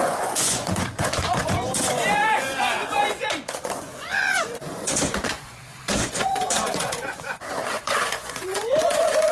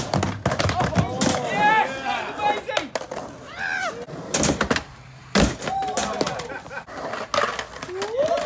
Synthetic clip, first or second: first